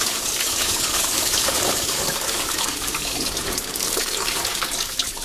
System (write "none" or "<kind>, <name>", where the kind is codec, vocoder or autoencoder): codec, DAC